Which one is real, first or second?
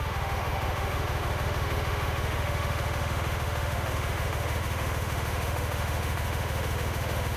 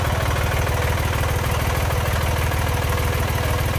second